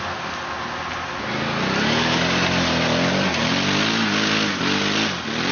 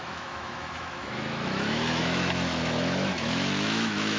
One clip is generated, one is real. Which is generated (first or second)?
second